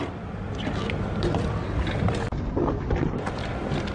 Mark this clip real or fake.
real